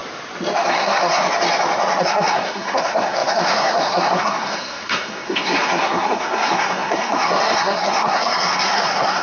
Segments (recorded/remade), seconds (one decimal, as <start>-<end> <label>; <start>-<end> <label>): 0.0-0.7 recorded; 0.7-1.2 remade; 1.2-2.0 recorded; 2.0-9.2 remade